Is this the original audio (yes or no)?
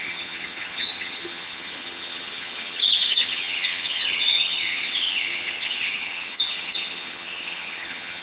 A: no